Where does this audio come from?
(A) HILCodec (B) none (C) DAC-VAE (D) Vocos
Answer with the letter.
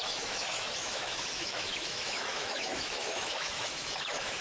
C